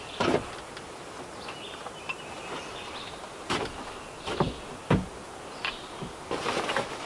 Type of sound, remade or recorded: recorded